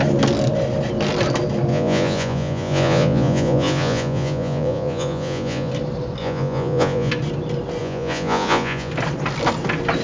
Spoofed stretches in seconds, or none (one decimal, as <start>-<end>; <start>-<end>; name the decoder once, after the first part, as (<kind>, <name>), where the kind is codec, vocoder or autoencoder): 1.7-5.7 (vocoder, Vocos); 6.2-7.1; 7.8-8.9